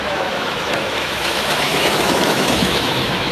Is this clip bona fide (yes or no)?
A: no